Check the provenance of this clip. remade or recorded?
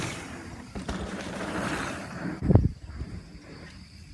remade